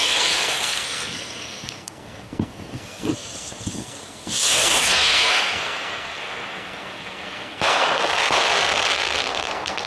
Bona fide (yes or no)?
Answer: no